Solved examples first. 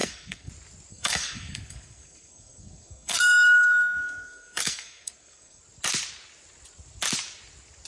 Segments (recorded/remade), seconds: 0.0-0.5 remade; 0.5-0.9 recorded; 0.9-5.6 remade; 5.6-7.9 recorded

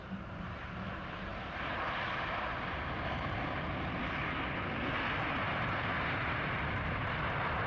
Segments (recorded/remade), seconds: 0.0-7.7 recorded

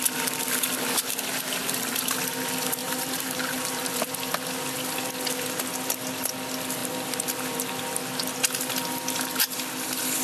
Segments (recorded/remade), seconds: 0.0-2.8 recorded; 2.8-4.1 remade; 4.1-10.2 recorded

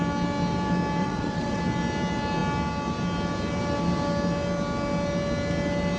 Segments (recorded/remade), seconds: 0.0-1.0 recorded; 1.0-1.6 remade; 1.6-6.0 recorded

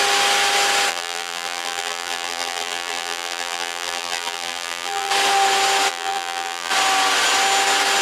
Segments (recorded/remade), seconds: 0.0-0.9 recorded; 0.9-5.1 remade; 5.1-5.9 recorded; 5.9-6.7 remade; 6.7-8.0 recorded